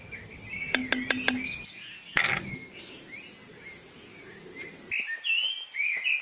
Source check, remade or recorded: recorded